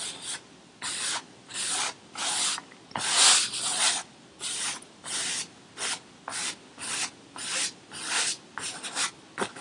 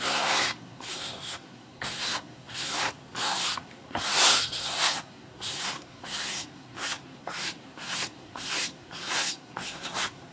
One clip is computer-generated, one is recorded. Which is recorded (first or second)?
first